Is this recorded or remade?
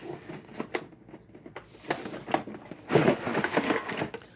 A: recorded